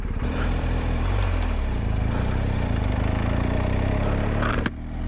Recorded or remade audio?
remade